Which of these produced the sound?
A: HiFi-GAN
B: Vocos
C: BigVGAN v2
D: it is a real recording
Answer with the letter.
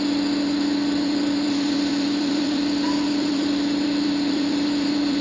C